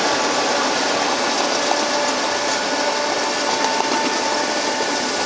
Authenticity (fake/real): real